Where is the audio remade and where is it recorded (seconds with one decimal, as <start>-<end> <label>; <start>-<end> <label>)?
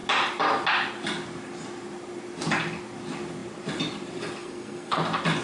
0.0-4.4 recorded; 4.4-5.0 remade; 5.0-5.4 recorded